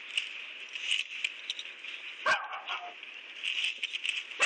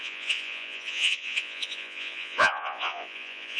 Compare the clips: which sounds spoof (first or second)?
second